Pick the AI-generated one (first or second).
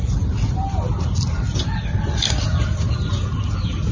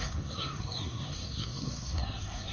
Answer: second